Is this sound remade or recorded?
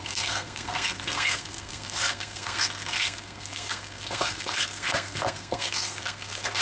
remade